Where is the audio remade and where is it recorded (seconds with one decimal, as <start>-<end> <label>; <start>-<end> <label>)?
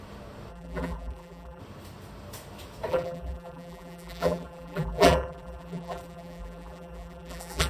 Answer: 0.0-0.5 recorded; 0.5-1.6 remade; 1.6-2.9 recorded; 2.9-7.7 remade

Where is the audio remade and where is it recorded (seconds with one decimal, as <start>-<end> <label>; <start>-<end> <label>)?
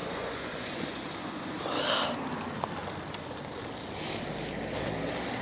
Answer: 0.0-1.5 remade; 1.5-5.4 recorded